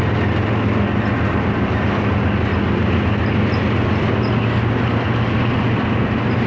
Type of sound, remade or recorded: recorded